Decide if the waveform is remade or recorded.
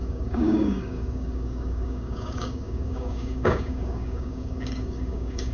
remade